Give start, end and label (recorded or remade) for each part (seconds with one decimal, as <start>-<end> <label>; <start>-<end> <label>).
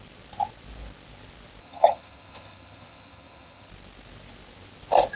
0.0-1.6 recorded; 1.6-3.7 remade; 3.7-5.2 recorded